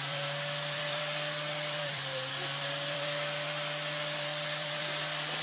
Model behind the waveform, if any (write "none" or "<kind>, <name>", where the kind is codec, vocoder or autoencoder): vocoder, BigVGAN v2